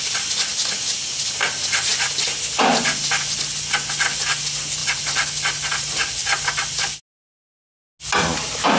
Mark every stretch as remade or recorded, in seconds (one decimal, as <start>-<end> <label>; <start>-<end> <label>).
0.0-8.8 recorded